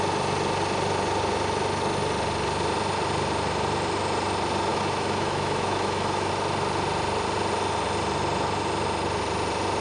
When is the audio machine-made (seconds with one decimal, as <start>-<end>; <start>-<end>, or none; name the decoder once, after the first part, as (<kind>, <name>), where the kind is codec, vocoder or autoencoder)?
4.7-6.3 (autoencoder, DAC-VAE)